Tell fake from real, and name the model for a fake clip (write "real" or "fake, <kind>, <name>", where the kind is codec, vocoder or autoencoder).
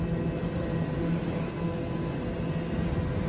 real